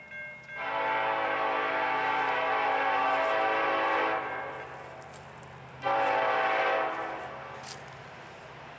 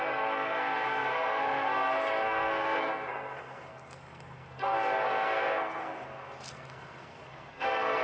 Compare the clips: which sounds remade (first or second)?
second